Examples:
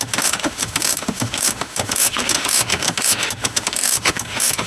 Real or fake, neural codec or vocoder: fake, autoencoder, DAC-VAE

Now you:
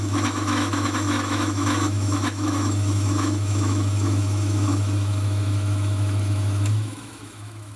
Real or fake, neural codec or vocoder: fake, autoencoder, DAC-VAE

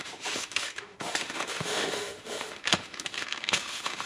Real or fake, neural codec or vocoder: fake, autoencoder, DAC-VAE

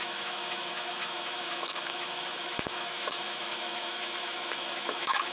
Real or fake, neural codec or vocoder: fake, autoencoder, DAC-VAE